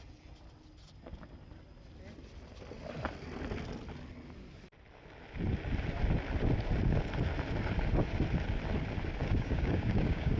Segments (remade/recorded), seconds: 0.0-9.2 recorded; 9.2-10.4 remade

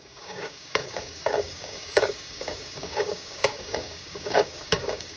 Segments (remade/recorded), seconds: 0.0-5.2 remade

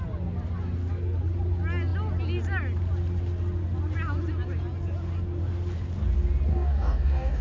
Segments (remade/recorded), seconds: 0.0-6.5 recorded; 6.5-7.4 remade

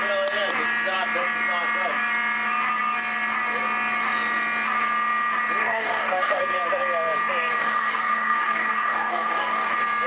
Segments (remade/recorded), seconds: 0.0-5.6 recorded; 5.6-6.4 remade; 6.4-7.6 recorded; 7.6-9.7 remade; 9.7-10.1 recorded

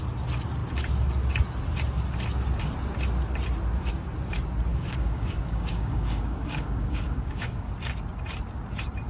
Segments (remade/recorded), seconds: 0.0-4.7 recorded; 4.7-7.7 remade; 7.7-9.1 recorded

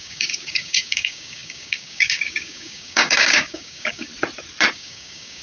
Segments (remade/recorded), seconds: 0.0-4.1 remade; 4.1-4.7 recorded; 4.7-5.4 remade